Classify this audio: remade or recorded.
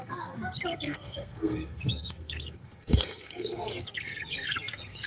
remade